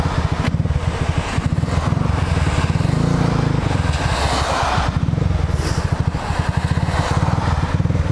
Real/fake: real